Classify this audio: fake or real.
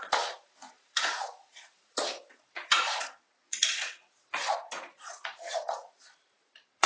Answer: fake